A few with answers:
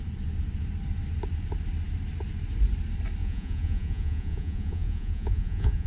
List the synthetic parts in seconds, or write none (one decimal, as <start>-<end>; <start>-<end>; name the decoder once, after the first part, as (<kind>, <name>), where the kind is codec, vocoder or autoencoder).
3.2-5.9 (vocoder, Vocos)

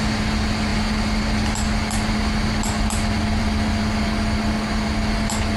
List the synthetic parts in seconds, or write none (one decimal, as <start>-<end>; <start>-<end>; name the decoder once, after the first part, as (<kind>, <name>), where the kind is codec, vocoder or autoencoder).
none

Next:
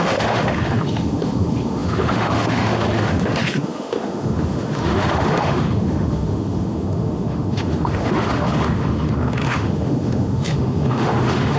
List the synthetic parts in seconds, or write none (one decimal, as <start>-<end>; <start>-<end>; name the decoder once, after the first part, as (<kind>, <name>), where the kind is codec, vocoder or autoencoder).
0.0-11.6 (autoencoder, DAC-VAE)

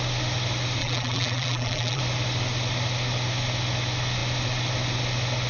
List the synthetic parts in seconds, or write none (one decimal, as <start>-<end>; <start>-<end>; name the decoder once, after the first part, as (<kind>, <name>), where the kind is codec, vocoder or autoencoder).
0.8-2.0 (vocoder, BigVGAN v2)

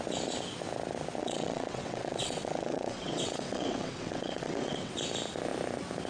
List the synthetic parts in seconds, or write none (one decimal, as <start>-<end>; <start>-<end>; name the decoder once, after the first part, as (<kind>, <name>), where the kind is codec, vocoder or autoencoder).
1.2-4.9 (vocoder, WaveNeXt)